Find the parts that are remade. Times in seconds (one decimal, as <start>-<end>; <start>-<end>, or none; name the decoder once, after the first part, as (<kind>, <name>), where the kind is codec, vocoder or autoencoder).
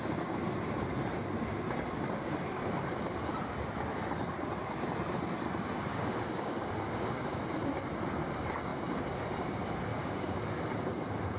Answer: 5.9-7.4 (codec, DAC); 9.9-10.4